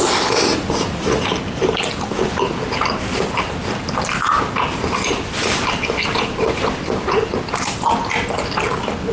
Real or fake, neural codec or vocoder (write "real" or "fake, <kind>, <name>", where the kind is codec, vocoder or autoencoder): real